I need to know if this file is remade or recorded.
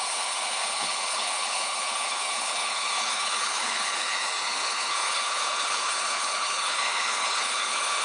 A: remade